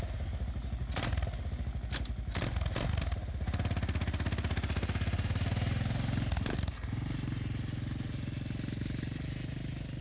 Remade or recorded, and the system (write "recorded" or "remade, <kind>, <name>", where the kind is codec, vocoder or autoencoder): recorded